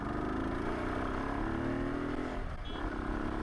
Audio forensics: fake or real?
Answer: real